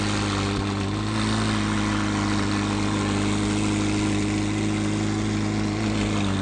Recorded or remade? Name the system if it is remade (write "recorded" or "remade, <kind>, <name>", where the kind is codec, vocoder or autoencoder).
recorded